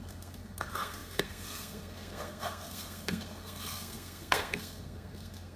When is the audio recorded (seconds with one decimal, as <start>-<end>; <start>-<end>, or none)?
none